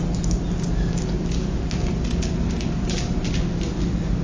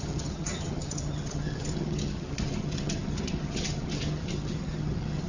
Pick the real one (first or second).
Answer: first